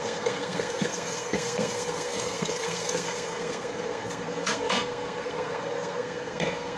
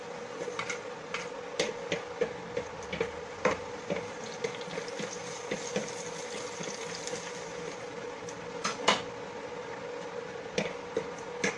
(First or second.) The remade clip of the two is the first